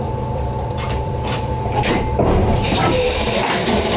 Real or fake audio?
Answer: fake